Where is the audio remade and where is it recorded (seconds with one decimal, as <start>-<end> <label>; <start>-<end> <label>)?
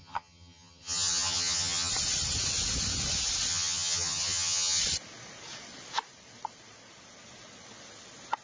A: 0.0-1.9 remade; 1.9-3.5 recorded; 3.5-4.8 remade; 4.8-8.4 recorded